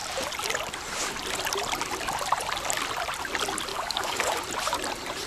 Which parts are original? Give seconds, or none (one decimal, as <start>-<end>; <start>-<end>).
0.0-3.7; 4.4-5.3